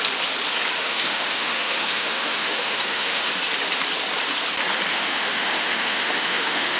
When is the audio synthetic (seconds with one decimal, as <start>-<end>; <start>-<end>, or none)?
0.8-3.3; 4.9-6.8